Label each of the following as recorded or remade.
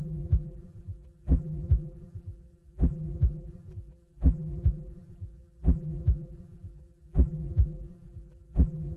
remade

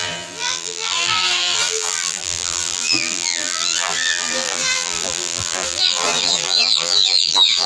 remade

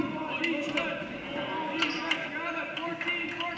recorded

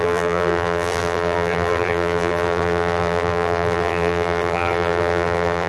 remade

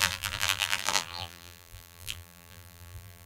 remade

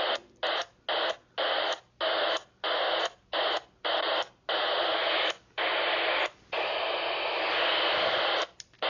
recorded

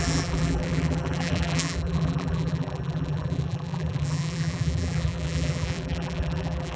remade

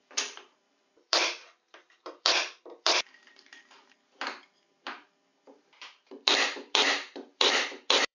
remade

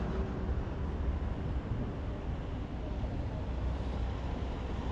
recorded